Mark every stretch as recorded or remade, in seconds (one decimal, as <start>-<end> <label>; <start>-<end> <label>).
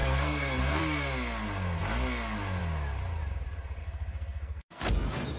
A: 0.0-0.8 remade; 0.8-3.8 recorded; 3.8-4.8 remade; 4.8-5.4 recorded